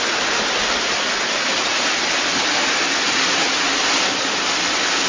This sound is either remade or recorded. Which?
recorded